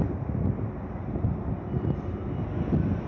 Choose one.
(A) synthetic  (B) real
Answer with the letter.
B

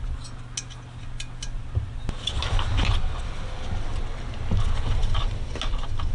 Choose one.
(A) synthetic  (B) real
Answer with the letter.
B